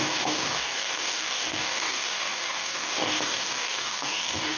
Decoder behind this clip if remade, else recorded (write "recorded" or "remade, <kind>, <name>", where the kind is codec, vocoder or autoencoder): remade, codec, DAC